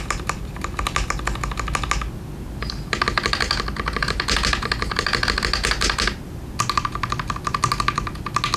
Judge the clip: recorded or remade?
recorded